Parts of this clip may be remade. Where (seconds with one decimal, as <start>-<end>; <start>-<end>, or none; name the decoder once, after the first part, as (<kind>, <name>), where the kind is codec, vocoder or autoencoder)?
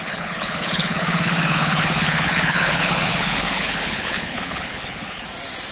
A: 0.0-5.2 (codec, HILCodec)